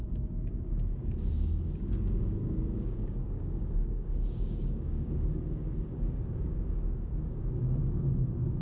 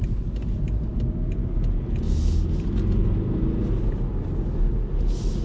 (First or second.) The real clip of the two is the second